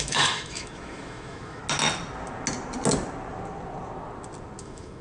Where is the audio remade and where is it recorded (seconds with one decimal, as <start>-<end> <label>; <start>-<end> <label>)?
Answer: 0.0-1.6 remade; 1.6-4.6 recorded; 4.6-5.0 remade